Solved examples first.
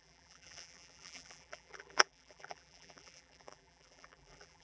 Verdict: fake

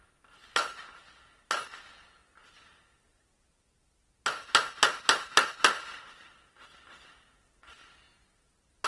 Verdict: real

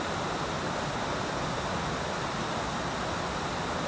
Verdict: real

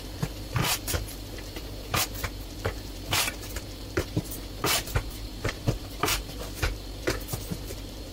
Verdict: fake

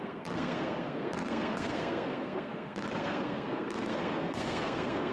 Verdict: fake